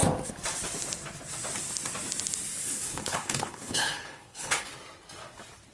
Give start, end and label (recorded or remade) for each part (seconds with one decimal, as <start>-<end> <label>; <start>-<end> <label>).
0.0-2.6 recorded; 2.6-4.7 remade; 4.7-5.7 recorded